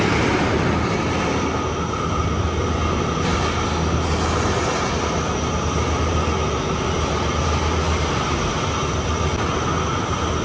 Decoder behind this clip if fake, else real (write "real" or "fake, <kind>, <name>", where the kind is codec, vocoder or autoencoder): real